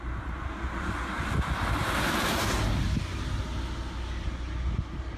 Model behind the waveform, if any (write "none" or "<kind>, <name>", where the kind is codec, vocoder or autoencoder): none